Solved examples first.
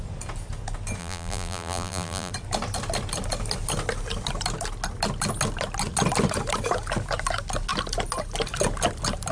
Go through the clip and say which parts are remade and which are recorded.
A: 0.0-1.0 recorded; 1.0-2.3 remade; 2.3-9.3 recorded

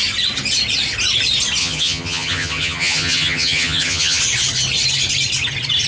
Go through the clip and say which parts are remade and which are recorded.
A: 0.0-1.6 recorded; 1.6-4.2 remade; 4.2-5.9 recorded